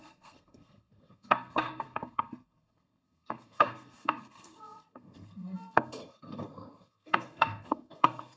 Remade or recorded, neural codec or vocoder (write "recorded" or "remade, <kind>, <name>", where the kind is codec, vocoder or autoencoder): remade, codec, SNAC